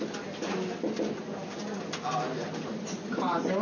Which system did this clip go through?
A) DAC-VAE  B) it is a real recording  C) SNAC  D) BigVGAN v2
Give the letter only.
B